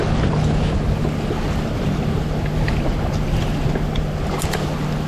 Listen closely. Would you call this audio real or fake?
real